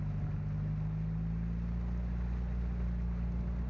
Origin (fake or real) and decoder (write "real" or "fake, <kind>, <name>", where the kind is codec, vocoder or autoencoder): real